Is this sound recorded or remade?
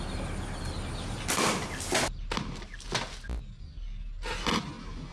recorded